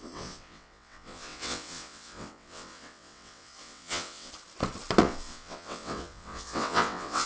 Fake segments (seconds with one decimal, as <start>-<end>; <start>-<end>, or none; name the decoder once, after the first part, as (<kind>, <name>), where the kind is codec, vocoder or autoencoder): 0.0-4.3 (vocoder, WaveNeXt); 5.0-7.3

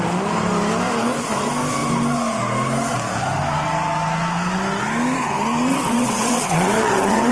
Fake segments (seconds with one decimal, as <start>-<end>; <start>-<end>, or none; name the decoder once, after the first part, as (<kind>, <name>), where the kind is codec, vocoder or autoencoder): 5.7-7.3 (vocoder, WaveNeXt)